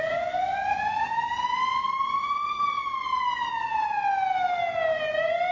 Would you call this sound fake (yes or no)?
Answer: no